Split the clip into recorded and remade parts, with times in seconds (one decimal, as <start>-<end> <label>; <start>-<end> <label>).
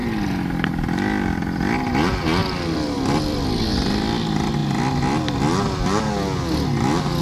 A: 0.0-2.4 recorded; 2.4-3.6 remade; 3.6-7.2 recorded